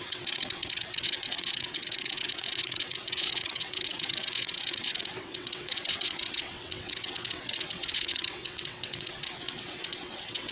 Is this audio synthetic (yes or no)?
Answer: yes